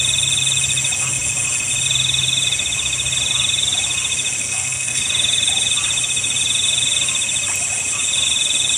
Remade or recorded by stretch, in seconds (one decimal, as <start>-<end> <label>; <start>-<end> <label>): 0.0-4.4 recorded; 4.4-5.0 remade; 5.0-8.8 recorded